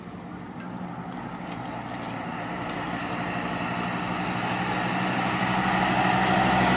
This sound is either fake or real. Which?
real